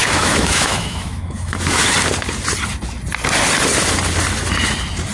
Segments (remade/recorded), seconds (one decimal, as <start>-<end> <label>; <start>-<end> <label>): 0.0-1.8 remade; 1.8-5.1 recorded